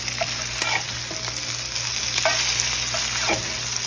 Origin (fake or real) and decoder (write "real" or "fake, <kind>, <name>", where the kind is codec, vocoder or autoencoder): real